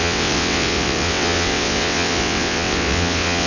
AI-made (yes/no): yes